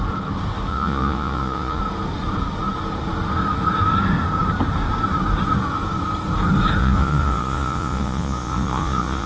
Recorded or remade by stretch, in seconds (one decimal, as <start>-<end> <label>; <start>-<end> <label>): 0.0-0.7 recorded; 0.7-1.8 remade; 1.8-6.8 recorded; 6.8-9.3 remade